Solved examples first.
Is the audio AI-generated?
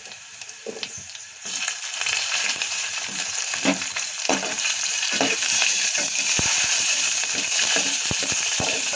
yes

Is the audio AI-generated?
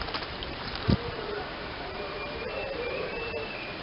yes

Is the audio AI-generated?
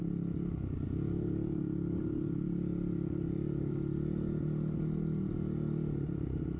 no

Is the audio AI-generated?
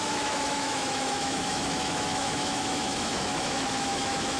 yes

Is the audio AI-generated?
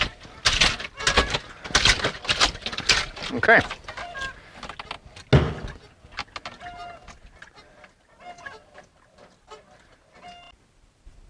no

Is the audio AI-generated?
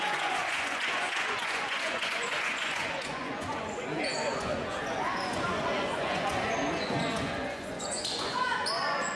yes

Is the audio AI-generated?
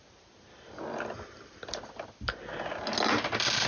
no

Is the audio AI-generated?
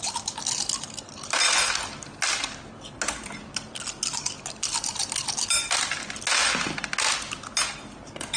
no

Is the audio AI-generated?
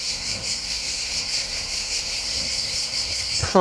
yes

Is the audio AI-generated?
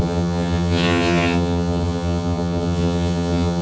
yes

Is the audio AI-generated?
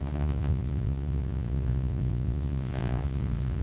yes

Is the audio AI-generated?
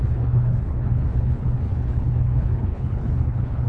yes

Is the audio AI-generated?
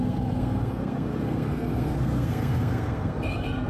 yes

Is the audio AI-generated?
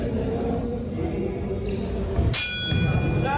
no